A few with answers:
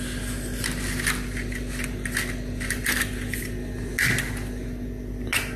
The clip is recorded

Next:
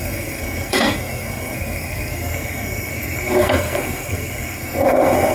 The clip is remade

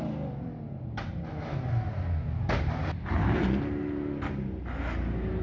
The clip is recorded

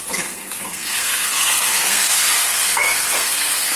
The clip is remade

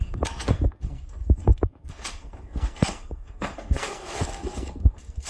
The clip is remade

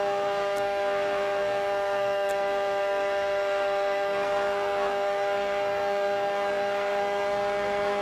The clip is remade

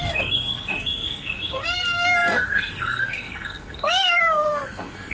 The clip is remade